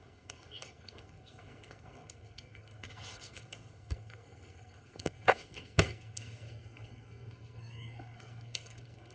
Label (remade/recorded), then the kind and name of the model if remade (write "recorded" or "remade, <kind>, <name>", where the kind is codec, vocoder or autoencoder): remade, codec, SNAC